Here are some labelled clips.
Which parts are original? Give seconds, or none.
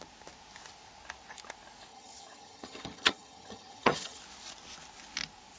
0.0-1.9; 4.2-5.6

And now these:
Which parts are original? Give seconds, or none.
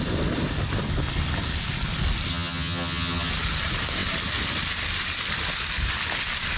0.0-2.3; 3.3-6.6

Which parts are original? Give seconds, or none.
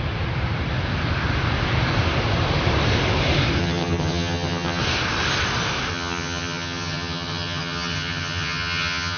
0.0-3.6; 4.8-5.9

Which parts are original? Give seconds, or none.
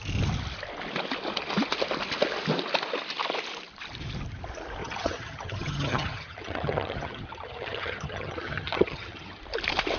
0.0-4.8; 9.4-10.0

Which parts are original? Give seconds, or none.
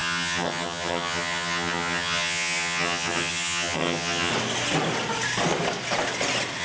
4.3-6.6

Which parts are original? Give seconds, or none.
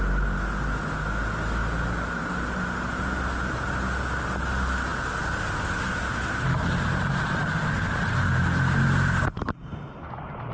0.0-10.5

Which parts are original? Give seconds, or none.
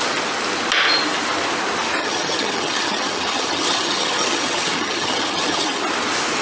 0.0-2.0; 5.8-6.4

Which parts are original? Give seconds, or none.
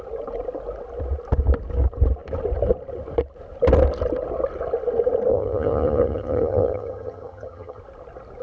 0.0-5.3; 7.8-8.4